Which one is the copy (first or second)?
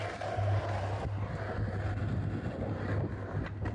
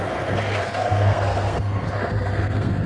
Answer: second